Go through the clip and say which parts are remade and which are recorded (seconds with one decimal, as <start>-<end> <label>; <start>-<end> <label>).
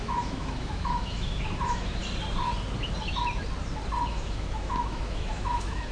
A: 0.0-2.0 remade; 2.0-4.1 recorded; 4.1-5.9 remade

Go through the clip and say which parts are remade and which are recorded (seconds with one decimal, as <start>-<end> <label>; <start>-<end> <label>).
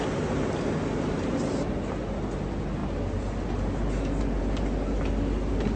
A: 0.0-5.8 recorded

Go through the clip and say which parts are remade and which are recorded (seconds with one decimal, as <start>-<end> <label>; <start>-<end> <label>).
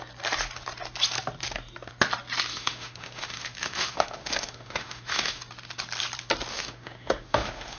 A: 0.0-2.5 recorded; 2.5-5.4 remade; 5.4-6.5 recorded; 6.5-7.8 remade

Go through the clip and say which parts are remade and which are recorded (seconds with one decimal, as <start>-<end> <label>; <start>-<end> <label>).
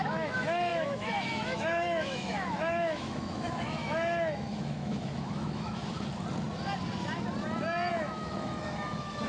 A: 0.0-5.8 remade; 5.8-7.9 recorded; 7.9-9.3 remade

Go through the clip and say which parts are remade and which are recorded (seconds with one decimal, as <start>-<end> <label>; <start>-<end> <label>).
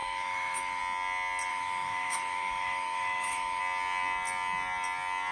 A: 0.0-0.8 remade; 0.8-1.5 recorded; 1.5-3.6 remade; 3.6-5.3 recorded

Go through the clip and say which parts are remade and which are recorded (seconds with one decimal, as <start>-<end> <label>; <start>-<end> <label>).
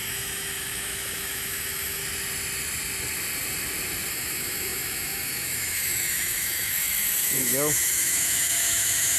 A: 0.0-2.0 remade; 2.0-4.1 recorded; 4.1-9.2 remade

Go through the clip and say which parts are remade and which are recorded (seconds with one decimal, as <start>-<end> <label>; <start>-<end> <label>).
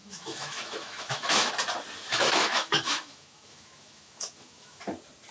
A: 0.0-1.5 remade; 1.5-2.1 recorded; 2.1-4.8 remade; 4.8-5.3 recorded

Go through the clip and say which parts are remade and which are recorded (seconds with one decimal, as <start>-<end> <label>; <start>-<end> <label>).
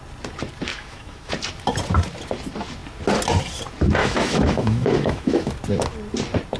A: 0.0-0.7 recorded; 0.7-1.3 remade; 1.3-4.0 recorded; 4.0-5.5 remade; 5.5-6.6 recorded